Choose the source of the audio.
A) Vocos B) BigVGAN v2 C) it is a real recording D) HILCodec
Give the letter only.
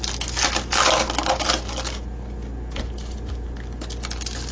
C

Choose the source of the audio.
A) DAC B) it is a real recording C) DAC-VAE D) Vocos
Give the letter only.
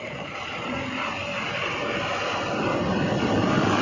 B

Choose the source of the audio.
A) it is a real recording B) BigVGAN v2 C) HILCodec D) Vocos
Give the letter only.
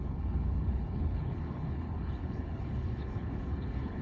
C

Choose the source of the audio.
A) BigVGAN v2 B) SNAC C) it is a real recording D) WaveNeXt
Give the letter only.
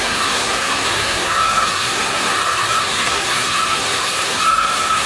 B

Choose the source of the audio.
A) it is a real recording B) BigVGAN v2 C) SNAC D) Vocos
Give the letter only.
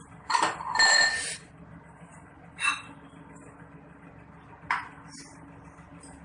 B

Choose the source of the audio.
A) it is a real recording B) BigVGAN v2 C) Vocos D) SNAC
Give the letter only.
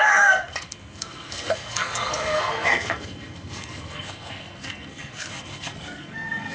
D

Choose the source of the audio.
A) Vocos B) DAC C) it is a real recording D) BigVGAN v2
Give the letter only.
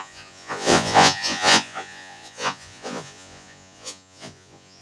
A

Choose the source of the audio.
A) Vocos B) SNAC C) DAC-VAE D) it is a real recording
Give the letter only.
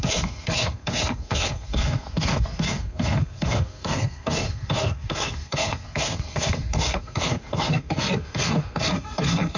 B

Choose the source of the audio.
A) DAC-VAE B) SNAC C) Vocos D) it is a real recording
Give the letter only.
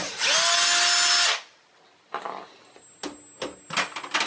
D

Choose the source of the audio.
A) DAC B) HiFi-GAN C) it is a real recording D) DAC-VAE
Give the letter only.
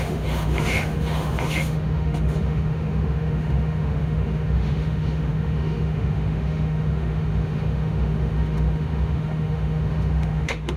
D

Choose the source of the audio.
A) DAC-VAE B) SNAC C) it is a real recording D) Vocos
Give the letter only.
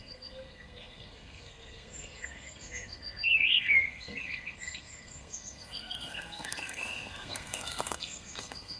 B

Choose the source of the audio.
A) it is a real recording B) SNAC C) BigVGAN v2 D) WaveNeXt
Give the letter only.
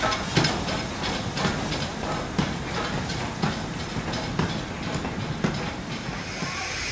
A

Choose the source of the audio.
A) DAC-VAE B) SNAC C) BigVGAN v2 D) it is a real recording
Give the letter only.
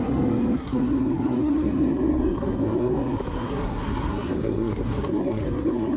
B